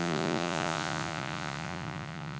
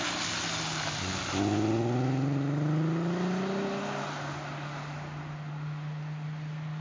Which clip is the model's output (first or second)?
first